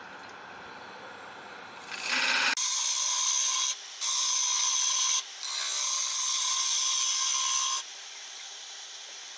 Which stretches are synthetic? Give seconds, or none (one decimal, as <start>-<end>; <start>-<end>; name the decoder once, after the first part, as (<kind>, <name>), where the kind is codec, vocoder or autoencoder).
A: 7.9-9.4 (vocoder, BigVGAN v2)